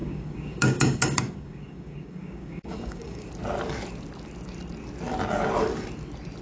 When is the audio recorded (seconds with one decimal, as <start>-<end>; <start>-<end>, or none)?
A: 3.3-6.4